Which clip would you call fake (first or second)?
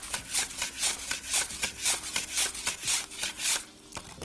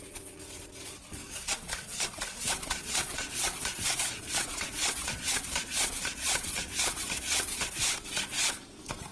second